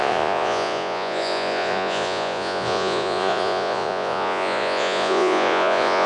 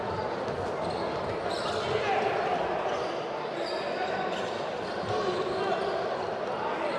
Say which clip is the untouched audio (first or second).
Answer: second